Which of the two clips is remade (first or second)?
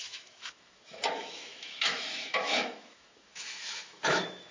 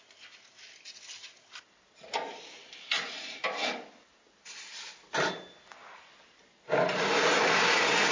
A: first